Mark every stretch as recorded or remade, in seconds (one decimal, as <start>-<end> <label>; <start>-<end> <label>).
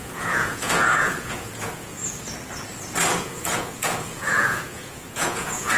0.0-2.0 remade; 2.0-3.2 recorded; 3.2-5.8 remade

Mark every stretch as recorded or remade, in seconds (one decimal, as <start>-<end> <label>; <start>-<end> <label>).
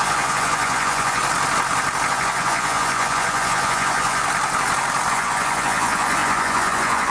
0.0-1.2 remade; 1.2-2.1 recorded; 2.1-4.2 remade; 4.2-5.1 recorded; 5.1-7.1 remade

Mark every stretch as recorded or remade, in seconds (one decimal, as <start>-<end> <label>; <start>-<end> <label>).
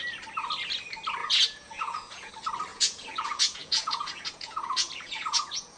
0.0-1.2 recorded; 1.2-2.3 remade; 2.3-2.7 recorded; 2.7-5.8 remade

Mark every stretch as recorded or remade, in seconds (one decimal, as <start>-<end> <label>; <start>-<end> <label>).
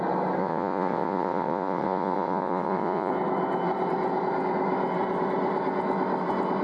0.0-0.4 recorded; 0.4-3.1 remade; 3.1-6.6 recorded